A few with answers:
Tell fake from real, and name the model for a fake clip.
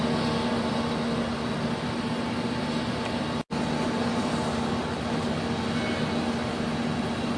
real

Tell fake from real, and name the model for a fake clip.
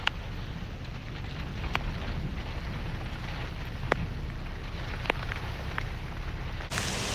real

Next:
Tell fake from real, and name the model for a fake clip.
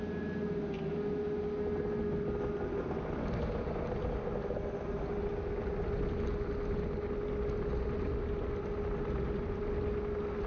real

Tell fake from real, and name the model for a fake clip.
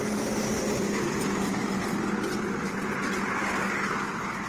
real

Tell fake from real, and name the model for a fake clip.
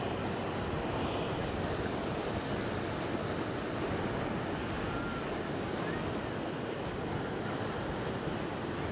real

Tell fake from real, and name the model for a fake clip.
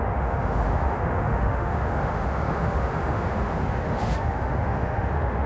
fake, autoencoder, DAC-VAE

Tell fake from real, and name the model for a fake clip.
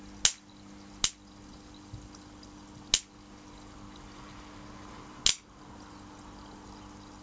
real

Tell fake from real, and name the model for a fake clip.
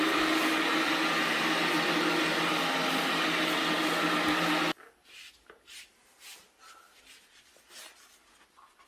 real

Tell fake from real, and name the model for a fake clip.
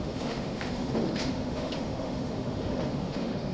fake, autoencoder, DAC-VAE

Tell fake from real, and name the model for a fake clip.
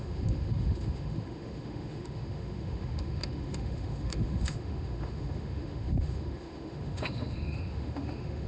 fake, autoencoder, DAC-VAE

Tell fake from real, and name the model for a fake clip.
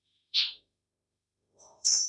fake, autoencoder, DAC-VAE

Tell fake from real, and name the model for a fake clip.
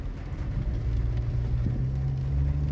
real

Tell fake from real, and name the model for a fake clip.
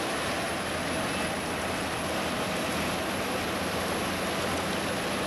real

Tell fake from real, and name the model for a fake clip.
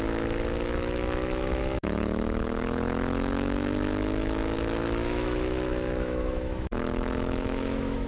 fake, autoencoder, DAC-VAE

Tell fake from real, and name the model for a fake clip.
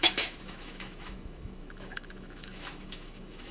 fake, autoencoder, DAC-VAE